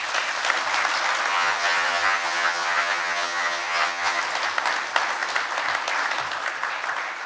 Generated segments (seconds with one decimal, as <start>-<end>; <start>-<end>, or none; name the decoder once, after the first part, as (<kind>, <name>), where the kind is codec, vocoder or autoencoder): 1.3-4.2 (vocoder, HiFi-GAN)